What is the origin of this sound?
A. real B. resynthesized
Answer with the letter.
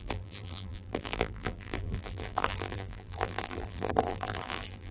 B